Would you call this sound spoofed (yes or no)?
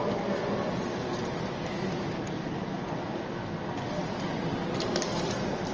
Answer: no